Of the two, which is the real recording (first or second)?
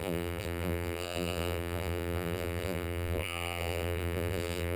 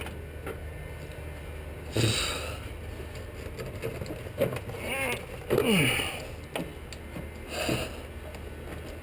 second